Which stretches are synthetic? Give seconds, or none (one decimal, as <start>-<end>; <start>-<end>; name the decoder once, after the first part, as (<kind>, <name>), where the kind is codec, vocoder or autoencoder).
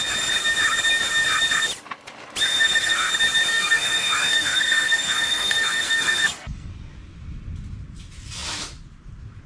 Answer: 2.5-3.1 (codec, SNAC); 3.5-6.7